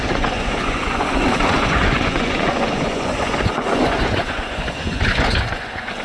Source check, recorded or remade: remade